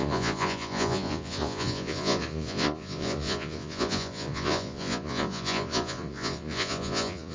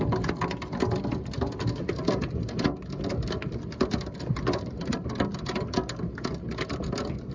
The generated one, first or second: first